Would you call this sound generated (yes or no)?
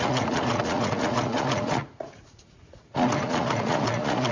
yes